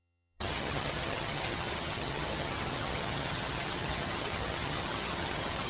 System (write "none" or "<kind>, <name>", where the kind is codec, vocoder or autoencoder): vocoder, HiFi-GAN